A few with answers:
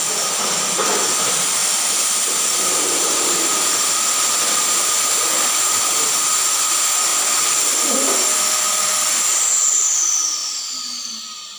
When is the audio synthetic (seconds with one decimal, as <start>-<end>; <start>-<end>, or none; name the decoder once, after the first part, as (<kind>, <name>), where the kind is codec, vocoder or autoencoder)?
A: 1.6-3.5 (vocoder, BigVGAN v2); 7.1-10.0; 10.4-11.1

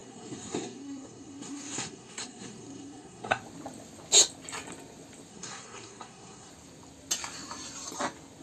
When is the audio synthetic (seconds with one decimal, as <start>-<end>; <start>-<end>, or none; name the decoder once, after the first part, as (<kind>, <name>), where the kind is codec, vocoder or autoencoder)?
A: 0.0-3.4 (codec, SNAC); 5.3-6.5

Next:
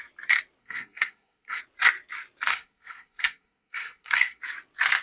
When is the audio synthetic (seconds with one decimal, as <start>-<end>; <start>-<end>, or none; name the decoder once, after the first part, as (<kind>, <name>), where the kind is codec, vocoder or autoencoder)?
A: 0.6-1.6 (codec, SNAC); 2.5-4.4

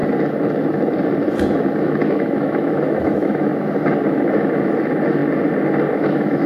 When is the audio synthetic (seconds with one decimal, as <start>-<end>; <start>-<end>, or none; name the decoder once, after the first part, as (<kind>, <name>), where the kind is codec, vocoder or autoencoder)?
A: 1.8-3.5 (autoencoder, DAC-VAE); 4.1-5.2; 5.9-6.5

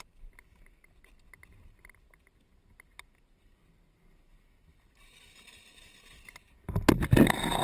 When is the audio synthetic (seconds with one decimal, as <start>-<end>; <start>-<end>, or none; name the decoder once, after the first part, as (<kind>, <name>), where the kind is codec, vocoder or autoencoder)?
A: none

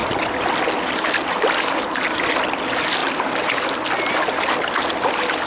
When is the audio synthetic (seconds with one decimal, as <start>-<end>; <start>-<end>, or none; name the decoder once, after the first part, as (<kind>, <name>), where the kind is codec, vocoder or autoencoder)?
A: none